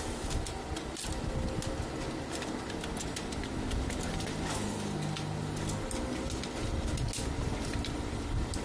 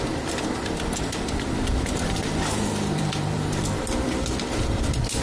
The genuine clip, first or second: first